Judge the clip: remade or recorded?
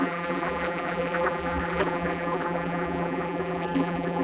remade